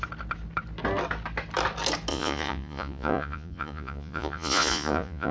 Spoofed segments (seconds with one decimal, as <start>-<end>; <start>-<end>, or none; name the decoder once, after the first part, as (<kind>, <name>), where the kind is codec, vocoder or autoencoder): 2.1-5.3 (vocoder, Vocos)